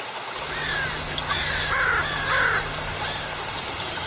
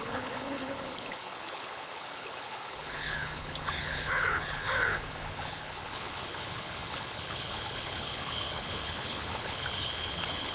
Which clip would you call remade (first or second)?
second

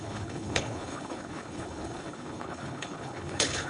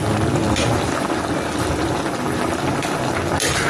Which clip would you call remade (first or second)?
first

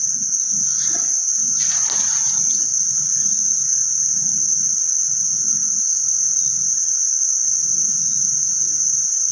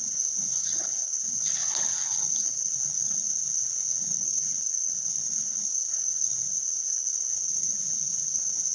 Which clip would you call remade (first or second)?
second